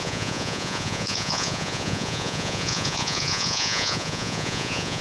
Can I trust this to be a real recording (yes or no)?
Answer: no